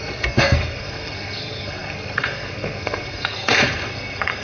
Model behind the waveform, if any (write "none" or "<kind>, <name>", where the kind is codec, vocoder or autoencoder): codec, SNAC